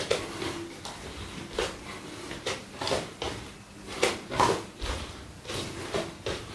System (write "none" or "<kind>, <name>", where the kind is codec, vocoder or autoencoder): none